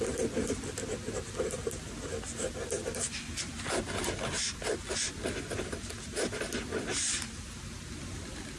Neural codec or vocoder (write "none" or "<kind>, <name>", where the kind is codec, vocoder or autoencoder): none